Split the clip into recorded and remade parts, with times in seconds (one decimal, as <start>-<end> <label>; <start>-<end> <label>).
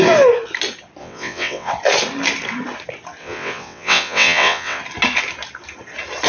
0.0-1.0 recorded; 1.0-1.7 remade; 1.7-3.2 recorded; 3.2-4.8 remade; 4.8-6.3 recorded